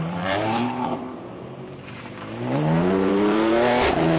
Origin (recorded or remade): remade